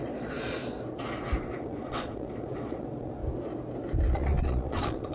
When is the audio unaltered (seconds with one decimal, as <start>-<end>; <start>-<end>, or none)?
0.6-1.4; 3.2-4.1